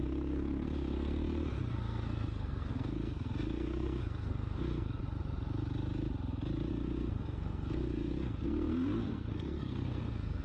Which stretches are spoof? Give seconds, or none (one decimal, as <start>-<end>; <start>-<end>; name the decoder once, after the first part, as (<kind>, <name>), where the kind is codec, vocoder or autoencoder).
0.0-5.0 (codec, SNAC); 6.7-10.4